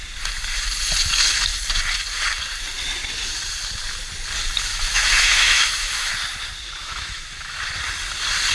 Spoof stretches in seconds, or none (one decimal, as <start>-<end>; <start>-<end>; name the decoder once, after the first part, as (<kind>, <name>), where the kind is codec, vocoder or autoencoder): 4.7-6.1 (autoencoder, DAC-VAE); 6.8-7.6